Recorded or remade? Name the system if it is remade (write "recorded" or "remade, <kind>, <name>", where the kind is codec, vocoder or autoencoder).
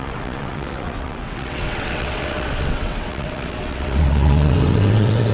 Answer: remade, vocoder, WaveNeXt